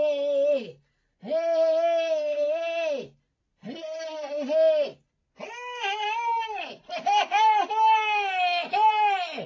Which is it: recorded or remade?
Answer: recorded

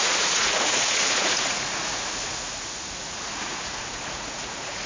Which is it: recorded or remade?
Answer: remade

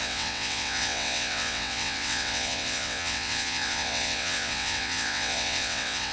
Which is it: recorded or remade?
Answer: remade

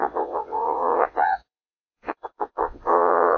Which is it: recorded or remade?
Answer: remade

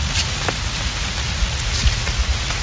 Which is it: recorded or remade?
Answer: remade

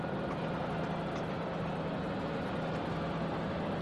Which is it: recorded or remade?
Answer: recorded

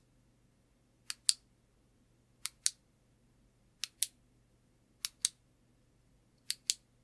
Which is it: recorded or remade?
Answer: recorded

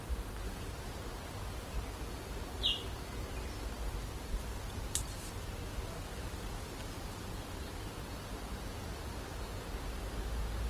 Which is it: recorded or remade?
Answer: recorded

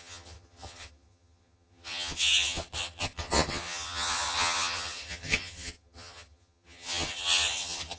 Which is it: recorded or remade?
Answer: remade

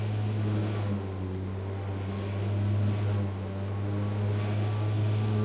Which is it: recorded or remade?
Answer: recorded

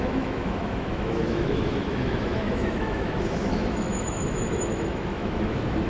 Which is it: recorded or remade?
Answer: remade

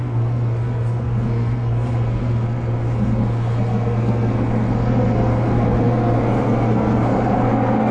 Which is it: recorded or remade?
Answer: remade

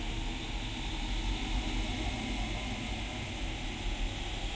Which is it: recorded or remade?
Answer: recorded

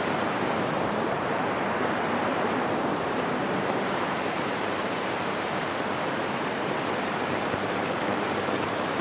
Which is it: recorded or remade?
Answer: remade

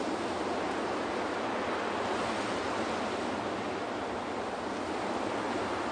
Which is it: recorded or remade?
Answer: recorded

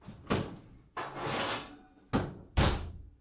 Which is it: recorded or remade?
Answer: recorded